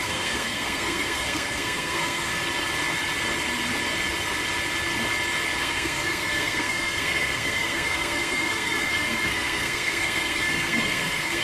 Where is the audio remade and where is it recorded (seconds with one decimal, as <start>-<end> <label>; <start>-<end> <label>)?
0.0-2.3 remade; 2.3-5.6 recorded; 5.6-11.4 remade